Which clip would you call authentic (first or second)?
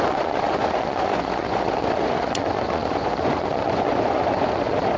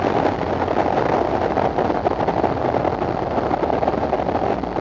second